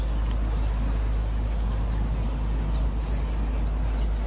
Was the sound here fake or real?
real